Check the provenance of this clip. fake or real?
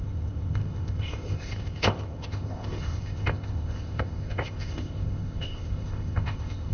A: fake